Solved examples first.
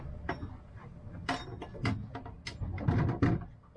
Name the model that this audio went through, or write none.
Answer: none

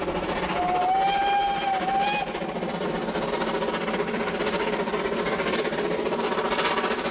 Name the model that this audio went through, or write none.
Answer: none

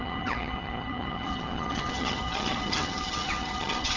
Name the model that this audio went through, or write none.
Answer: vocoder, HiFi-GAN